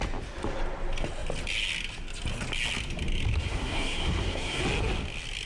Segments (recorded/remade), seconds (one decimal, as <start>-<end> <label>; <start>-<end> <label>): 0.0-3.4 recorded; 3.4-4.6 remade; 4.6-5.5 recorded